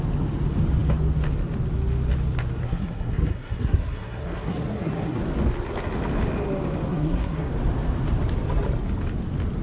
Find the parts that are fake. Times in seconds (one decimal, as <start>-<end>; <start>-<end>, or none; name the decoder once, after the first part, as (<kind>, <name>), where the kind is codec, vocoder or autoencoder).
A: 2.6-5.2 (codec, SNAC); 6.9-7.5